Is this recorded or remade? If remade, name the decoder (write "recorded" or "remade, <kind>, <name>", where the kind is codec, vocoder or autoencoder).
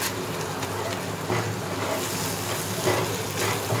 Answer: recorded